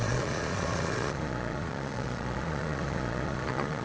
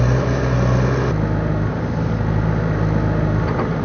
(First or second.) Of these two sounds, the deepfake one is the first